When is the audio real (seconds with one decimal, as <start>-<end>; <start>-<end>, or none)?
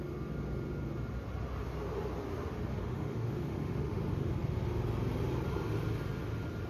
0.0-2.7; 4.3-6.7